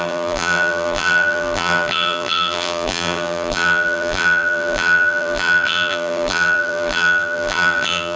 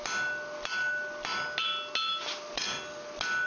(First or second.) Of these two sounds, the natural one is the second